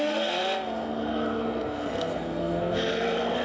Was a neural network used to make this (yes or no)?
yes